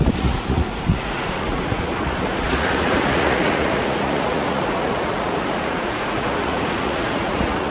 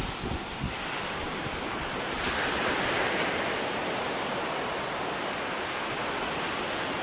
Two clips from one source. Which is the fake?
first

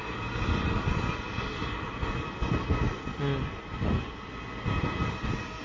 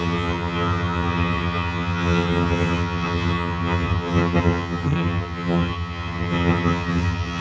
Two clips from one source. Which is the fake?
second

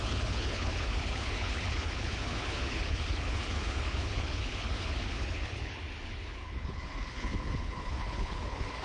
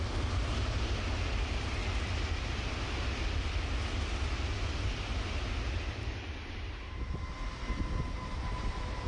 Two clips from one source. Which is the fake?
first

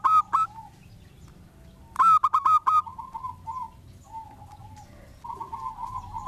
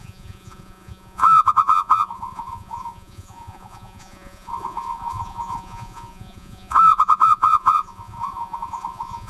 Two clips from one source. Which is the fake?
second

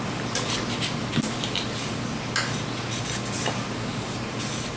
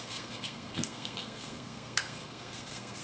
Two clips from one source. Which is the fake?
second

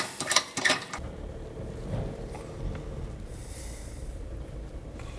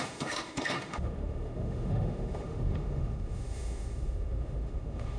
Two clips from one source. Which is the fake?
second